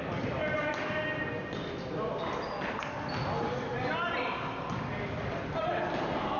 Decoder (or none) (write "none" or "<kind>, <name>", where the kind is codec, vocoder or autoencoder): none